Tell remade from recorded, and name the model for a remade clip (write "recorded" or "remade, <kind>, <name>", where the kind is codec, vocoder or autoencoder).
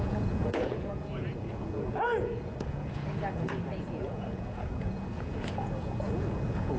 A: remade, vocoder, Vocos